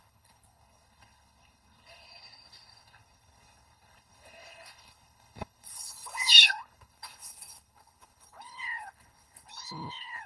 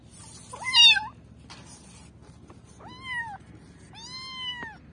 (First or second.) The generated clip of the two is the first